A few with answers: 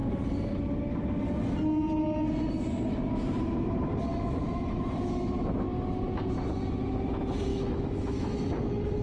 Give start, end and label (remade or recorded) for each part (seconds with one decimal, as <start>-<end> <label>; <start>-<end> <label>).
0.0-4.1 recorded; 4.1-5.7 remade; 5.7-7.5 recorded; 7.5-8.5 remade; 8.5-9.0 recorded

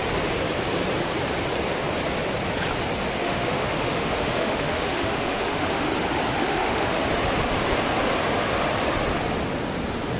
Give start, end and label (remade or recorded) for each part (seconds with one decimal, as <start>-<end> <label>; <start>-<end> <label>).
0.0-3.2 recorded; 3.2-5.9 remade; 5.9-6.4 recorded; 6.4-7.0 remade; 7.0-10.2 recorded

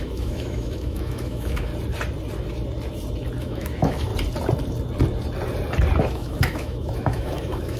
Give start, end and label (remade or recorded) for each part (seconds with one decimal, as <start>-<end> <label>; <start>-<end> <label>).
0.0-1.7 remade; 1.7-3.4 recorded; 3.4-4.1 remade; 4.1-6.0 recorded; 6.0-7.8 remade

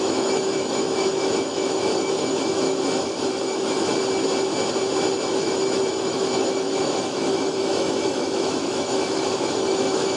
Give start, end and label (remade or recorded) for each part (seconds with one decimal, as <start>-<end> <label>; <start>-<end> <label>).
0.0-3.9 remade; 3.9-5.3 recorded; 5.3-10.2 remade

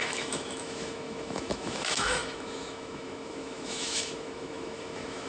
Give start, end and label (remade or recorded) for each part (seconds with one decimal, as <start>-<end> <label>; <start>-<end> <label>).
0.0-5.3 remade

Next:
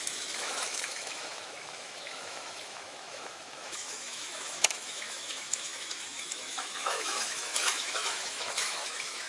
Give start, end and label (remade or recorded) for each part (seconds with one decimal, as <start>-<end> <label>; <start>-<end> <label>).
0.0-9.3 remade

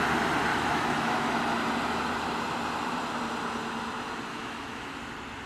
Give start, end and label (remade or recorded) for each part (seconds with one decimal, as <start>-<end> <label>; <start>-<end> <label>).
0.0-0.5 recorded; 0.5-1.3 remade; 1.3-4.3 recorded; 4.3-5.0 remade; 5.0-5.5 recorded